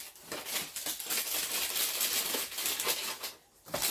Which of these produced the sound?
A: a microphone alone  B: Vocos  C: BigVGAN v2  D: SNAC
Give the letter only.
A